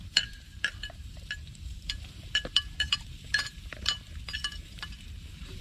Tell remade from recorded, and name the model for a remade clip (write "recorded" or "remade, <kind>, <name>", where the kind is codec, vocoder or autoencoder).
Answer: remade, vocoder, BigVGAN v2